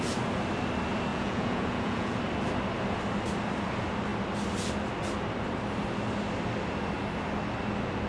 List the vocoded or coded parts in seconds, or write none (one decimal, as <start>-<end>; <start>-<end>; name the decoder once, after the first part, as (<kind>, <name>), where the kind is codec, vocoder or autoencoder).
1.1-2.2 (vocoder, Vocos)